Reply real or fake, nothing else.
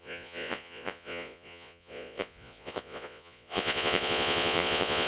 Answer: fake